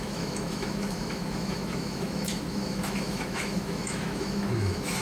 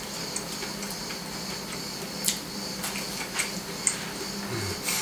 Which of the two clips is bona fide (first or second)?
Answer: second